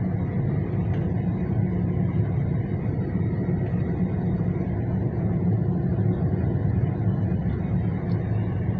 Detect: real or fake real